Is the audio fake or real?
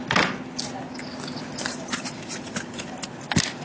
real